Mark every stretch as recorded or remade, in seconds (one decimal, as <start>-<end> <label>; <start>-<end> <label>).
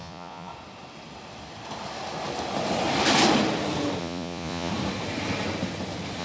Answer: 0.0-0.5 remade; 0.5-4.0 recorded; 4.0-4.7 remade; 4.7-6.2 recorded